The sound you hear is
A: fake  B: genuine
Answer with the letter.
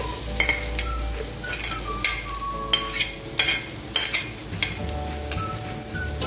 B